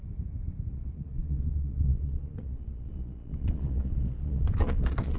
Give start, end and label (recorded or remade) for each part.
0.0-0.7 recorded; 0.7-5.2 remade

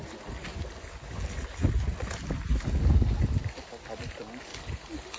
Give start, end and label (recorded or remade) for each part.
0.0-5.2 recorded

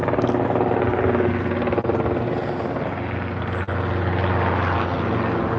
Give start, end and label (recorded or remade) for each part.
0.0-5.6 recorded

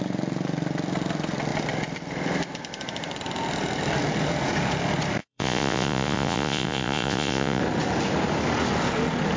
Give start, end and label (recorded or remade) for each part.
0.0-5.2 recorded; 5.2-7.6 remade; 7.6-9.4 recorded

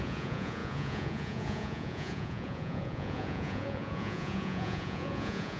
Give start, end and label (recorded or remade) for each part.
0.0-5.6 remade

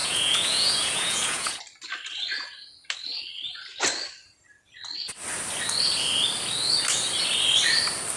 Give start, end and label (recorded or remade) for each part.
0.0-1.6 remade; 1.6-8.2 recorded

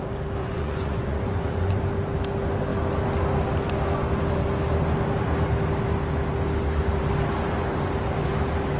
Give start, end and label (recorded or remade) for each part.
0.0-0.4 recorded; 0.4-1.8 remade; 1.8-8.8 recorded